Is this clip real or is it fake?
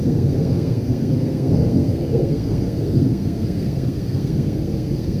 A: fake